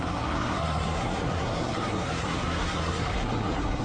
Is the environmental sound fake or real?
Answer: fake